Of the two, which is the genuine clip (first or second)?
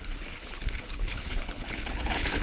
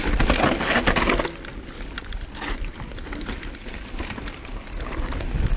second